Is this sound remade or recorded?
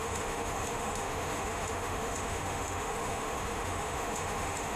remade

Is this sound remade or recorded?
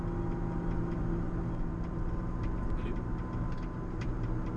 recorded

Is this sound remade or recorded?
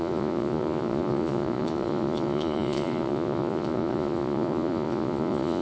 remade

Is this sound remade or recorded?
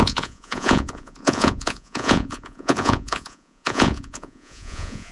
remade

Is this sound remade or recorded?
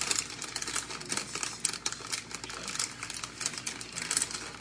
recorded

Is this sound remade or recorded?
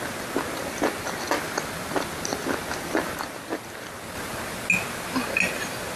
recorded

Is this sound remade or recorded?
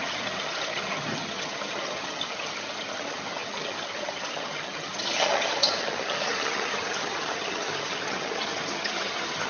remade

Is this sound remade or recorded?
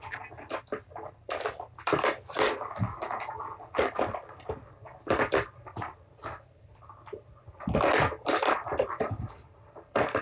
remade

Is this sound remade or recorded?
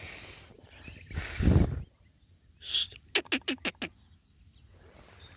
recorded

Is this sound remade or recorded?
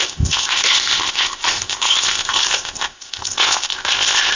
remade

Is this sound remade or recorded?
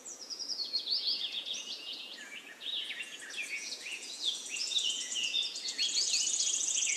remade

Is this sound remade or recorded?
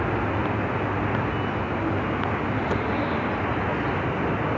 recorded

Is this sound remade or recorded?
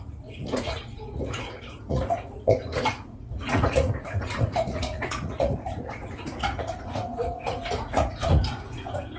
remade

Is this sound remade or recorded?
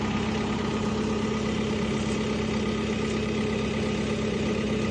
recorded